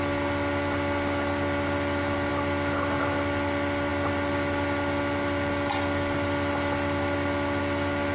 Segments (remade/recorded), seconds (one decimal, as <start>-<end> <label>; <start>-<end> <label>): 0.0-8.1 recorded